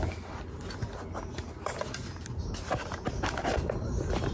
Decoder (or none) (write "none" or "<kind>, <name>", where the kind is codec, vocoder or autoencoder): none